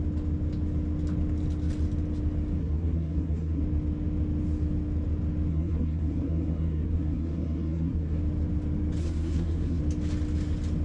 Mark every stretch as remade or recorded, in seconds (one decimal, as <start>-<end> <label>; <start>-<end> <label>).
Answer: 0.0-2.6 recorded; 2.6-3.6 remade; 3.6-5.5 recorded; 5.5-8.2 remade; 8.2-9.0 recorded; 9.0-9.8 remade; 9.8-10.8 recorded